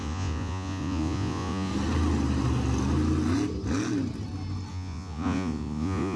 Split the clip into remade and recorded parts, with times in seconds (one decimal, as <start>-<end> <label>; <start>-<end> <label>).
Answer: 0.0-1.7 remade; 1.7-4.7 recorded; 4.7-6.2 remade